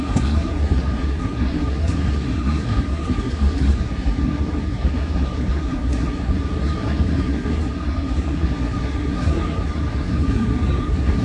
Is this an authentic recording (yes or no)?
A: no